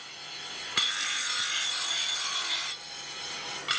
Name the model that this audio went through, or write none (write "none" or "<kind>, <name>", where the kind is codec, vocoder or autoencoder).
none